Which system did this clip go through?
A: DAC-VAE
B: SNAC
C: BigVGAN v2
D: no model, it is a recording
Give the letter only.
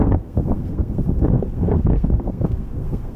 B